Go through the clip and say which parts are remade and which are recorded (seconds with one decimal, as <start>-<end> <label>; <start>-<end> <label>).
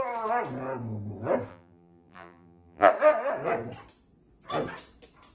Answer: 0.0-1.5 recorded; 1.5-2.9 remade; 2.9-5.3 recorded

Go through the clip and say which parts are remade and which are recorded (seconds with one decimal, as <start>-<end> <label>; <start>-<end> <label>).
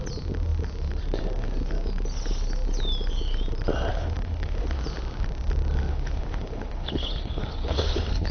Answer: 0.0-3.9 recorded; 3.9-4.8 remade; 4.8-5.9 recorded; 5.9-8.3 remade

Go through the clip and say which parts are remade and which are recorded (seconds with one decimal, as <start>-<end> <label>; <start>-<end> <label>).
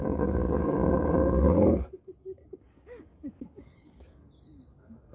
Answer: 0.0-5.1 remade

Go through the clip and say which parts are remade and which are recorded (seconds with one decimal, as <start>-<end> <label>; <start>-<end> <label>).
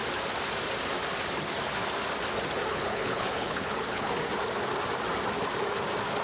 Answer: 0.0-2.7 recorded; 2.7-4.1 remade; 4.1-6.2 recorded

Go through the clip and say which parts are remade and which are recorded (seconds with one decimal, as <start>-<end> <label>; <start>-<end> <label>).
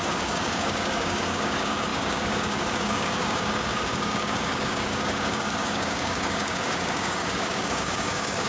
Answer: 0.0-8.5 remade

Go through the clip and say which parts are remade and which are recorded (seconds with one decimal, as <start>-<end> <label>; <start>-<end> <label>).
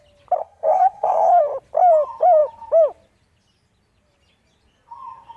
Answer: 0.0-0.4 recorded; 0.4-1.4 remade; 1.4-5.4 recorded